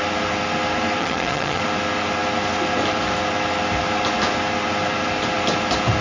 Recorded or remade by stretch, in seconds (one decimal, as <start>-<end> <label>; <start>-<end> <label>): 0.0-1.0 recorded; 1.0-1.6 remade; 1.6-6.0 recorded